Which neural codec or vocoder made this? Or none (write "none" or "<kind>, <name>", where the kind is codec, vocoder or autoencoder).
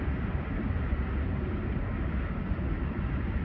none